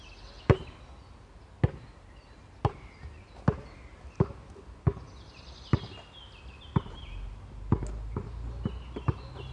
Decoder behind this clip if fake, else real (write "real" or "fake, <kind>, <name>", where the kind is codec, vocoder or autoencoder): real